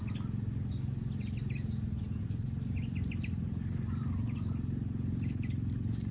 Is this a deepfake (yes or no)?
no